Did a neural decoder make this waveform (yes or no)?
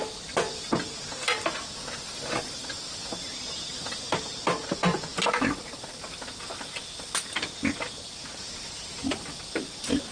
no